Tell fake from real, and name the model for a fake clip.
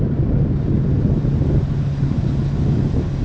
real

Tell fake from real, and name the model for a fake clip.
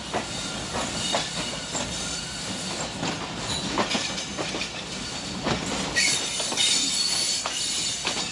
real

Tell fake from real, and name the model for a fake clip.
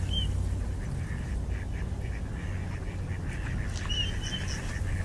real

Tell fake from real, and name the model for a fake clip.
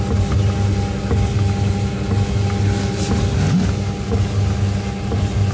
real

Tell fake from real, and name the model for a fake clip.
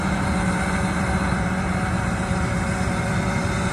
real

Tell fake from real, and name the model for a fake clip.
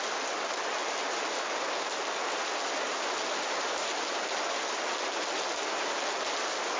real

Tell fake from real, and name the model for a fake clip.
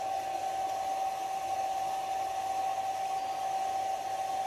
real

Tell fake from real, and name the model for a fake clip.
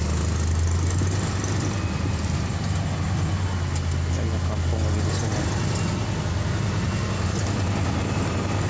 real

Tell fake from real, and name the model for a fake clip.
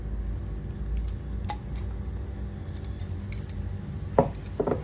real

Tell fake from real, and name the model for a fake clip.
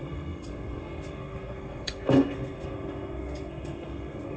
fake, codec, SNAC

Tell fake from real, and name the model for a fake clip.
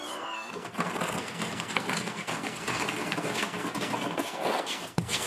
fake, codec, SNAC